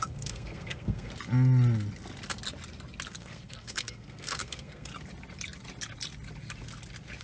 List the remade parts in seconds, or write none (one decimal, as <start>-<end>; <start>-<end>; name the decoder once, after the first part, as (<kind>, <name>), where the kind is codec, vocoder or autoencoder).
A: 0.0-1.1 (codec, SNAC); 3.1-4.9